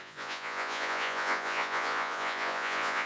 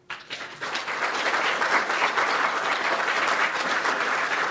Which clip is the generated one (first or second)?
first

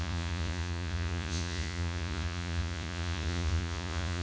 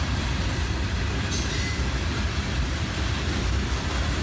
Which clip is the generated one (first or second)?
first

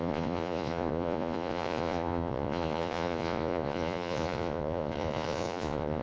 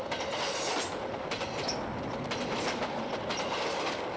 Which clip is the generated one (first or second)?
first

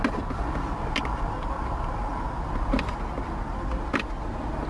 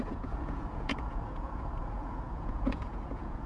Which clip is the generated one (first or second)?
second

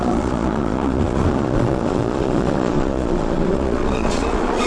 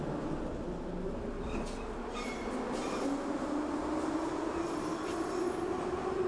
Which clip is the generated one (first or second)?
first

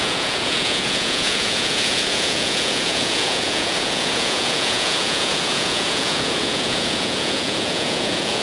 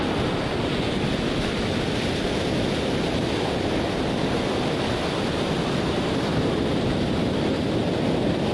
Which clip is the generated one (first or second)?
first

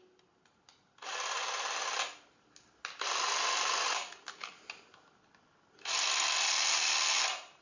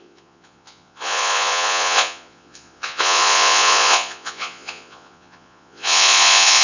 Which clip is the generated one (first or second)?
second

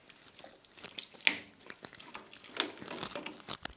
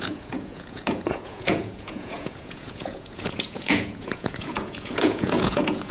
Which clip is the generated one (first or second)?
second